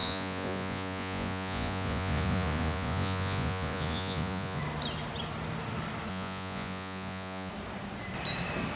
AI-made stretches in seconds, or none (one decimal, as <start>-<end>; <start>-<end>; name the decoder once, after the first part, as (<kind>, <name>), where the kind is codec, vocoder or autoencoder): 0.0-4.6 (vocoder, Vocos); 6.1-7.5